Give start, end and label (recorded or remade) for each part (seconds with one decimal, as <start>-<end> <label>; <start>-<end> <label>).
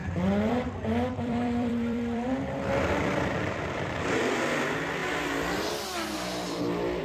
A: 0.0-4.2 remade; 4.2-7.0 recorded